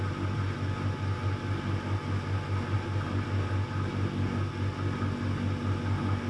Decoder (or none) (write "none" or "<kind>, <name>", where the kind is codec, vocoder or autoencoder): none